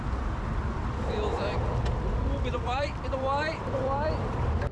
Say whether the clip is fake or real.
fake